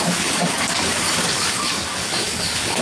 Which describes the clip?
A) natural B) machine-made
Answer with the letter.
B